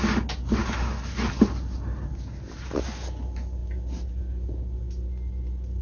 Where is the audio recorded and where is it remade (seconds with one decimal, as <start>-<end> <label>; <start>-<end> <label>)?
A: 0.0-5.8 recorded